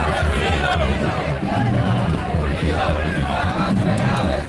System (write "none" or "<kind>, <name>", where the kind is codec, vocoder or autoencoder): vocoder, Vocos